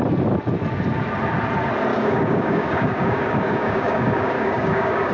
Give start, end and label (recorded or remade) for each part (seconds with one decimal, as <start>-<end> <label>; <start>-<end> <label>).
0.0-1.9 recorded; 1.9-5.1 remade